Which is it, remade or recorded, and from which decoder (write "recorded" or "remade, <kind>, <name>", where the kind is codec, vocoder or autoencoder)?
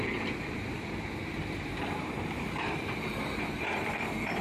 remade, vocoder, BigVGAN v2